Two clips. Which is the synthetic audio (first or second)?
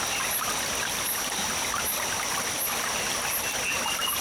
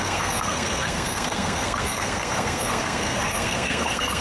second